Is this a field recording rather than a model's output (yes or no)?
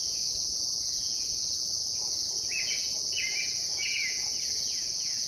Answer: no